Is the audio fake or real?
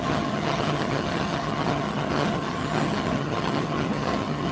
fake